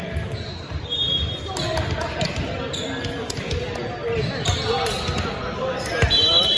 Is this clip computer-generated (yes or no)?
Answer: no